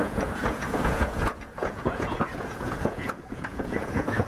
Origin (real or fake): fake